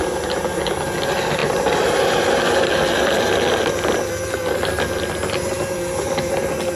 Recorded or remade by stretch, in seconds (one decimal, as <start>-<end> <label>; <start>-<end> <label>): 0.0-6.8 recorded